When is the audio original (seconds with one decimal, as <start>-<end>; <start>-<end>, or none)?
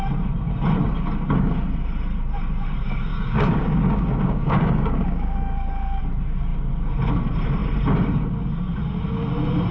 0.0-3.1; 6.0-9.7